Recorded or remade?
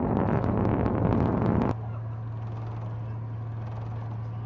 recorded